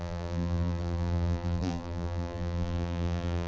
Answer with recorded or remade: remade